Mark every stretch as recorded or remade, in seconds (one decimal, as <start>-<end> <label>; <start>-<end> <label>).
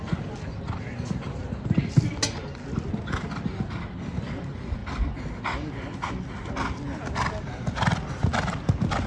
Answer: 0.0-9.1 recorded